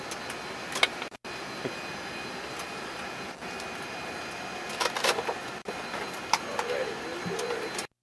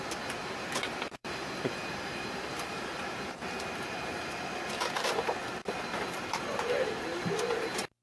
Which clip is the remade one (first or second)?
second